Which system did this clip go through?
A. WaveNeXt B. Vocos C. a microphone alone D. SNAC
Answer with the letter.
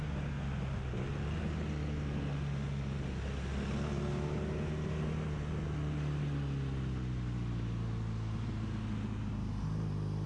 C